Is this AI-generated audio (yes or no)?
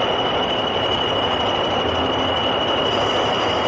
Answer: no